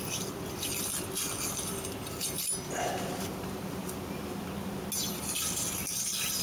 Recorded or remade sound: recorded